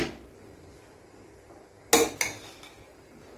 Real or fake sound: real